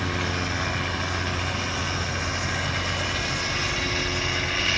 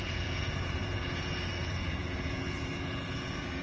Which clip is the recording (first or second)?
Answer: first